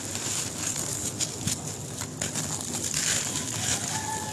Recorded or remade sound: recorded